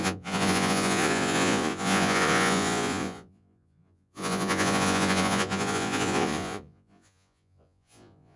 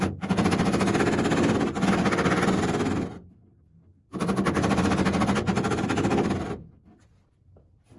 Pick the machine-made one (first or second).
first